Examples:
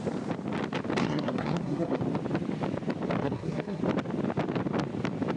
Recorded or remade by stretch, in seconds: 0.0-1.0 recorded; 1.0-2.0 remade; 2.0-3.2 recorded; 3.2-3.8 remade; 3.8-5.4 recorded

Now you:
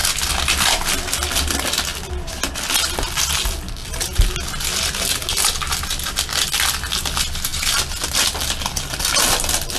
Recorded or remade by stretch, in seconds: 0.0-9.8 recorded

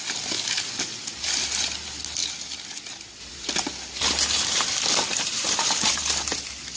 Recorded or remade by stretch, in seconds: 0.0-6.8 recorded

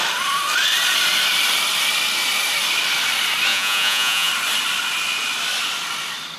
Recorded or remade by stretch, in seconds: 0.0-3.5 recorded; 3.5-4.3 remade; 4.3-6.4 recorded

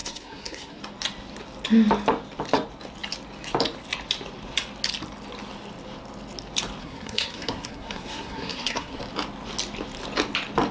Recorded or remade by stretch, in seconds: 0.0-0.8 remade; 0.8-6.8 recorded; 6.8-9.0 remade; 9.0-10.7 recorded